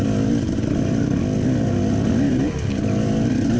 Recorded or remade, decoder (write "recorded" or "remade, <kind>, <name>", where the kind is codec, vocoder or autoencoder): recorded